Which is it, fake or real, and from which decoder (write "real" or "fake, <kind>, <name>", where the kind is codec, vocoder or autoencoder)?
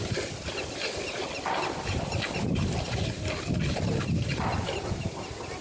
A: real